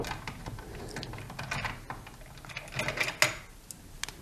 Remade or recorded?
recorded